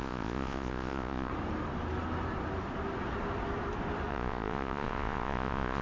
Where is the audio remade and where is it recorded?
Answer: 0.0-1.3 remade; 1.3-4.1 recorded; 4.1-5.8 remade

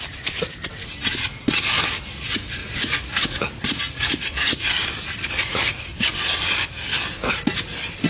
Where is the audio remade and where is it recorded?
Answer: 0.0-2.6 recorded; 2.6-4.7 remade; 4.7-8.1 recorded

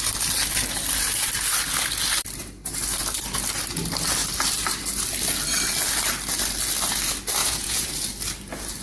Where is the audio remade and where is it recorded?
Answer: 0.0-7.4 recorded; 7.4-7.9 remade; 7.9-8.8 recorded